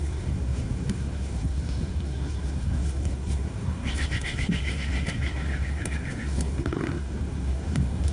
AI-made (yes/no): yes